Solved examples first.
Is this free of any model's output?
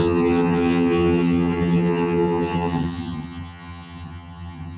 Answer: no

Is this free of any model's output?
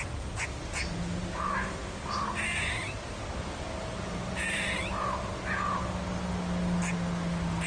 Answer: yes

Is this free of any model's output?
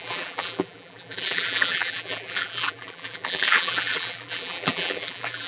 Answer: no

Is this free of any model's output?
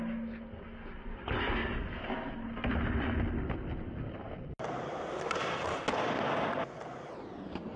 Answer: yes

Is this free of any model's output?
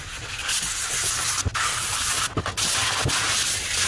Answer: yes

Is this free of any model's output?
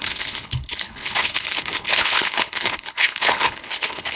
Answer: no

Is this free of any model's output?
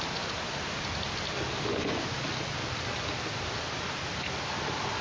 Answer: yes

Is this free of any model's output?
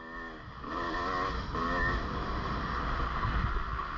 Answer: yes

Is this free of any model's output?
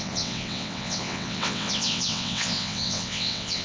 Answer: no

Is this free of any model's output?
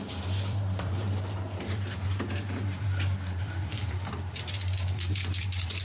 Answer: no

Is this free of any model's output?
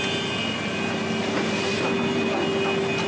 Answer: yes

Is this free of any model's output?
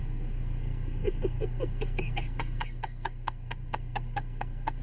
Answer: no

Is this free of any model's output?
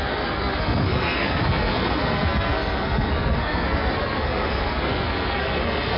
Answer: no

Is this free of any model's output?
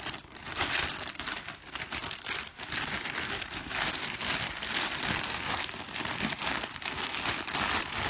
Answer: yes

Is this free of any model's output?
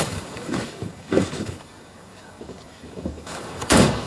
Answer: no